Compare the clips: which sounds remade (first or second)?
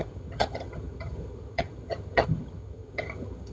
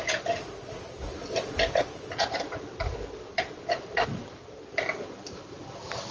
first